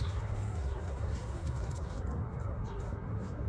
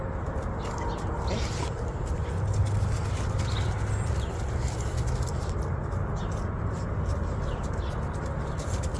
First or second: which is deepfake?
first